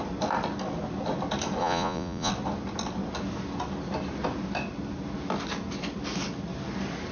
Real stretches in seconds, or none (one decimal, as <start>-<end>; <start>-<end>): 0.0-1.6; 2.3-7.1